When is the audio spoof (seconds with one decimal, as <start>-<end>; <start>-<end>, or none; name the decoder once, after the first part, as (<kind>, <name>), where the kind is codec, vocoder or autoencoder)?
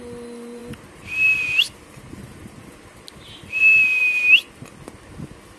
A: none